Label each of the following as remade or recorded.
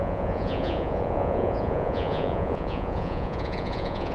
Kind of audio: remade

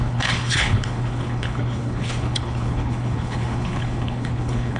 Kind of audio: remade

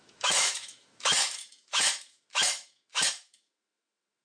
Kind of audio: remade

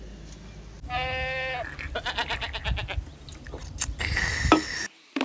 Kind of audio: recorded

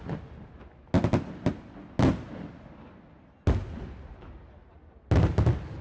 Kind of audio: recorded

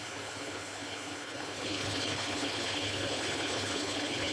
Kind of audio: remade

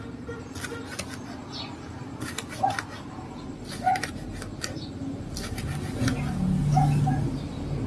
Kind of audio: recorded